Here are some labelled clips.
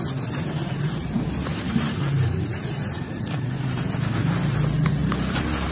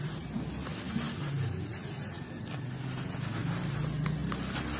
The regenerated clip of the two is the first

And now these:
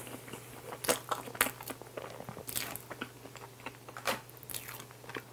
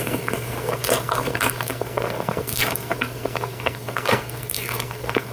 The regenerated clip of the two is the second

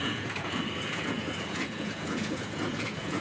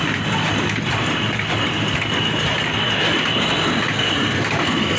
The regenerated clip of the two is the first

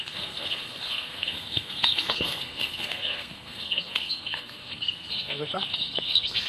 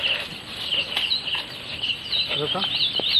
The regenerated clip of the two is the first